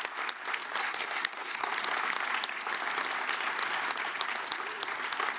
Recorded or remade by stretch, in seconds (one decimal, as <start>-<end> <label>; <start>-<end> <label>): 0.0-0.8 recorded; 0.8-1.7 remade; 1.7-5.4 recorded